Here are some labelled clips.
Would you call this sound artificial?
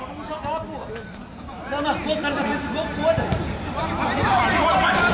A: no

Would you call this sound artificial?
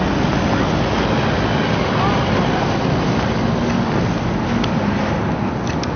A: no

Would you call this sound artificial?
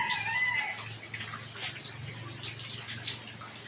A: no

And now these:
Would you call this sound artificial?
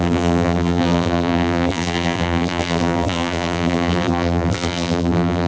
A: yes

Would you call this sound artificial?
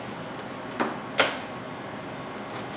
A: no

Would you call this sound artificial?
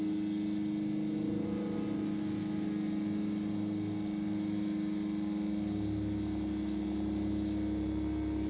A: no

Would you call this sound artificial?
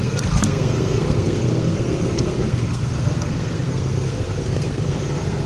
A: yes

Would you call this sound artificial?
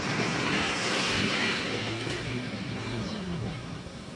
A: yes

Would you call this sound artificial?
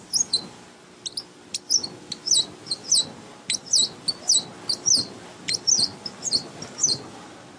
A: no